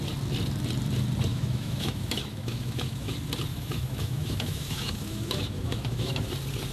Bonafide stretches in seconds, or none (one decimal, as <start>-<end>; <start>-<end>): 0.0-1.3; 3.1-3.5; 6.3-6.7